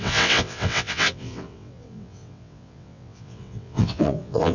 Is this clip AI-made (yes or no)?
yes